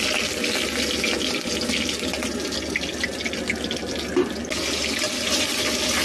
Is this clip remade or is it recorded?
recorded